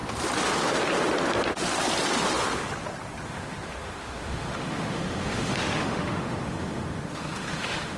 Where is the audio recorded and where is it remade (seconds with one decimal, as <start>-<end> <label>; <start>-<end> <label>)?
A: 0.0-3.2 recorded; 3.2-8.0 remade